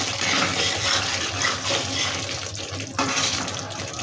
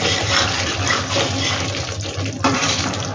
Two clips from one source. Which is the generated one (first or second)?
second